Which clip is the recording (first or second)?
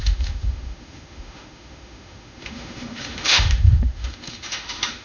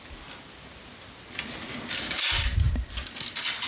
second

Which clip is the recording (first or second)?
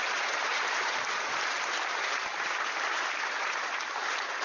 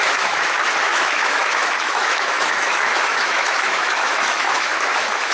first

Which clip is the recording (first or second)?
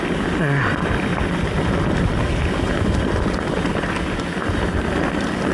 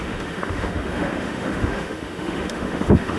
first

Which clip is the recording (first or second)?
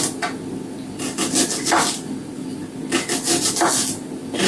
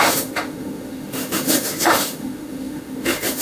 first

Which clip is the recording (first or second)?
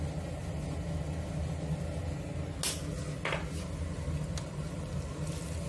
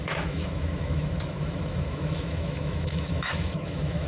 first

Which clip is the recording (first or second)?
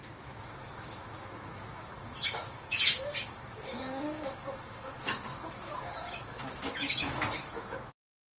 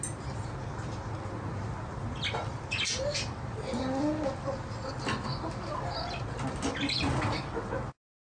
second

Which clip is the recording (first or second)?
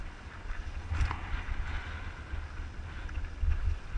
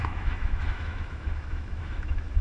first